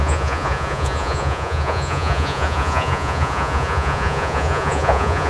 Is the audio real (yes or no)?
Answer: no